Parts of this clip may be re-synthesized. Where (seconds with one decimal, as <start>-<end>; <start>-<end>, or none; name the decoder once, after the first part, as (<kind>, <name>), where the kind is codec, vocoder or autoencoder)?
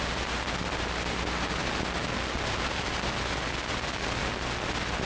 none